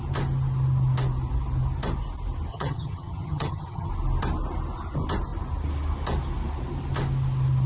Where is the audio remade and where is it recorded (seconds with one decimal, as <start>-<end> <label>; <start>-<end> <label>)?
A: 0.0-2.5 recorded; 2.5-3.9 remade; 3.9-7.7 recorded